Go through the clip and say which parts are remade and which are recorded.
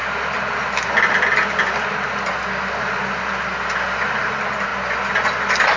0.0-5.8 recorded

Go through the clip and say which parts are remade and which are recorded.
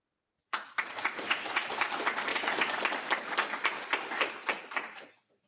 0.0-0.4 recorded; 0.4-1.7 remade; 1.7-2.3 recorded; 2.3-2.8 remade; 2.8-5.5 recorded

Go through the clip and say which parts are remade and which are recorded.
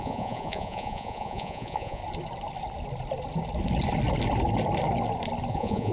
0.0-2.0 remade; 2.0-5.5 recorded; 5.5-5.9 remade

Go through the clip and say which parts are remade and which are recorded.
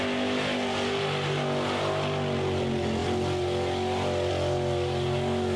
0.0-5.6 recorded